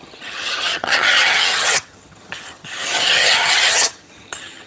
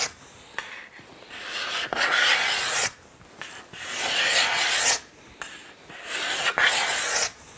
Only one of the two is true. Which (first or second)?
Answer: second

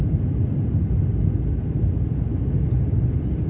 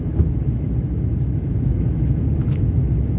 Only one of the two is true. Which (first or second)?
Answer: first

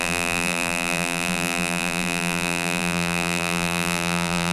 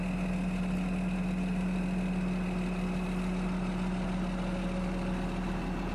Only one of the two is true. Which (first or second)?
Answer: second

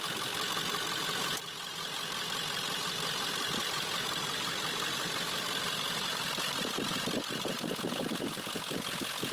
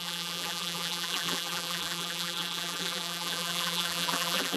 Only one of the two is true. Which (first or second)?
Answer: first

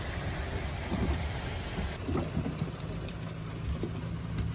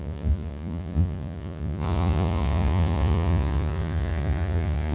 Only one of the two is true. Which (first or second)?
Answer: first